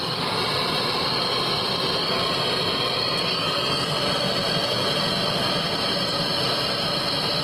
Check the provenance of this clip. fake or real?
real